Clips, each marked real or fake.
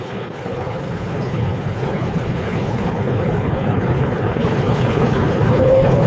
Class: fake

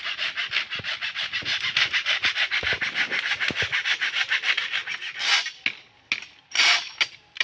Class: real